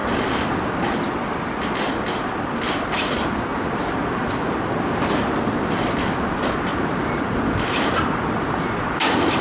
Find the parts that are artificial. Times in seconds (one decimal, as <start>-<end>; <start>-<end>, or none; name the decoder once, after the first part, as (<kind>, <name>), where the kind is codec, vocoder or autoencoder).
none